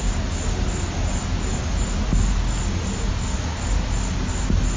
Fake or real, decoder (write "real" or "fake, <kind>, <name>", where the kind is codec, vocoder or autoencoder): real